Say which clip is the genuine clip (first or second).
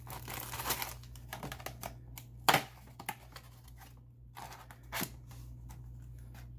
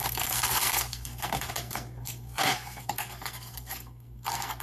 first